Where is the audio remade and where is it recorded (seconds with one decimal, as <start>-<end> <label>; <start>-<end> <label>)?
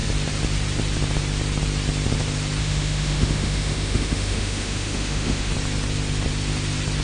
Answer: 0.0-2.6 recorded; 2.6-5.5 remade; 5.5-7.0 recorded